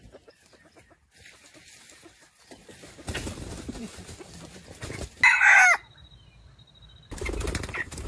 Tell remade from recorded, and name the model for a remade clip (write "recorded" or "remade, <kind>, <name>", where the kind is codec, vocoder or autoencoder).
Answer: recorded